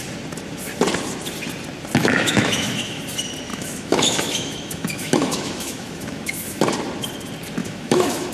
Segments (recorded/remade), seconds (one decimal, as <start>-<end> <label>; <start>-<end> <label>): 0.0-2.0 recorded; 2.0-3.0 remade; 3.0-3.5 recorded; 3.5-6.6 remade; 6.6-7.6 recorded; 7.6-8.3 remade